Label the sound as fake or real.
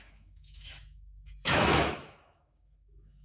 fake